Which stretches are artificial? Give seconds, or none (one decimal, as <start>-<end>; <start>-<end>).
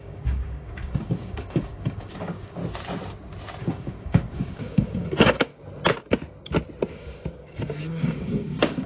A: 0.0-2.6; 3.6-5.5; 6.9-8.9